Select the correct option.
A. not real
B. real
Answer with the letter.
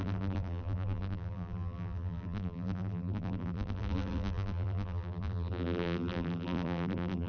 A